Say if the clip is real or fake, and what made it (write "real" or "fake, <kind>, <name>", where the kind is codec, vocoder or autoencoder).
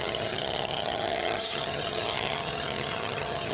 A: fake, vocoder, HiFi-GAN